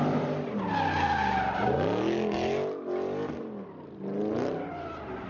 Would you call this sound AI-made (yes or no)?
no